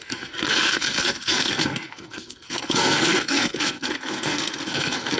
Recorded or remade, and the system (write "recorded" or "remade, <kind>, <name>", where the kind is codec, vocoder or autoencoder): remade, codec, SNAC